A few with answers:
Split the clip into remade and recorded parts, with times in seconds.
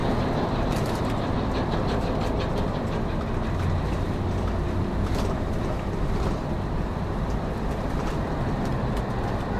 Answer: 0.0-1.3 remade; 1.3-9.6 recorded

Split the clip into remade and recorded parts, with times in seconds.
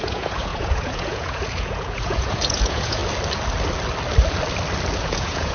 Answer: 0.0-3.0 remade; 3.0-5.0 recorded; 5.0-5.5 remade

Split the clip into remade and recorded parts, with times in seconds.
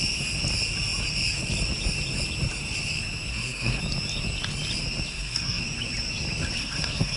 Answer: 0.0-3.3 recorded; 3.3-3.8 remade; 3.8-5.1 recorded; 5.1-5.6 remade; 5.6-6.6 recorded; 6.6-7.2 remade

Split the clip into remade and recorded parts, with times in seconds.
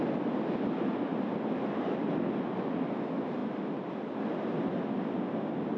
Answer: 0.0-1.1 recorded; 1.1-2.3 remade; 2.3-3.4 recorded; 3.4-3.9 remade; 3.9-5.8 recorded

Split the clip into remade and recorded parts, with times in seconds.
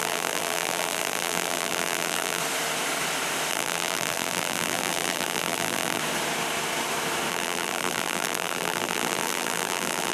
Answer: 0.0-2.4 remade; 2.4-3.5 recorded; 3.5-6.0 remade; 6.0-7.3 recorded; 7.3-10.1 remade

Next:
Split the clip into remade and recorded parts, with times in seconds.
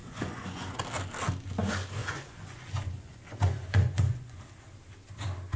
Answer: 0.0-0.8 remade; 0.8-2.0 recorded; 2.0-4.4 remade; 4.4-5.6 recorded